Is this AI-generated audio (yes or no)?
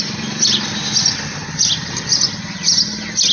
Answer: no